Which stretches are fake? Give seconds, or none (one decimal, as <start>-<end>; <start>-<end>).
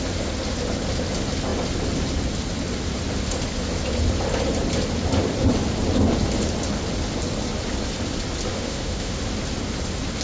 8.5-9.2